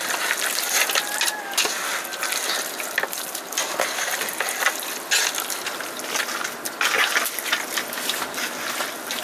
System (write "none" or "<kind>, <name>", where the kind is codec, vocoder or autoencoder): none